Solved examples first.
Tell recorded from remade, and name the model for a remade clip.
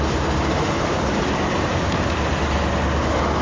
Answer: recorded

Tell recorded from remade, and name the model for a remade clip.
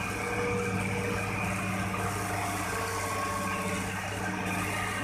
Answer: recorded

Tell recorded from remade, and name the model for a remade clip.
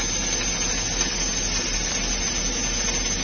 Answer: recorded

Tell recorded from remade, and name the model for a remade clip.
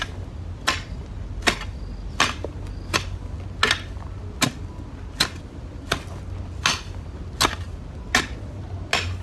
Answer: recorded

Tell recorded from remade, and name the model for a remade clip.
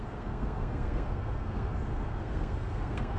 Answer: remade, codec, SNAC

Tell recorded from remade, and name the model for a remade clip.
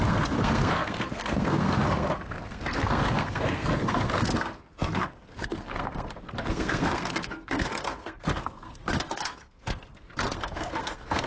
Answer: remade, codec, SNAC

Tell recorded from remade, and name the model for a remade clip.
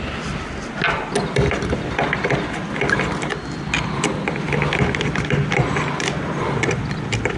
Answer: recorded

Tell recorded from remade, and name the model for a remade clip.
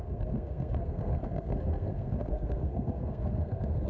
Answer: remade, codec, SNAC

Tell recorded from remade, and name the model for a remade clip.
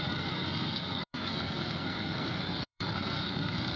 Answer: remade, codec, SNAC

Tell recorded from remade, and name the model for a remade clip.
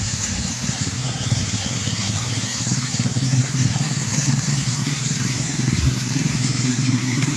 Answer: remade, codec, SNAC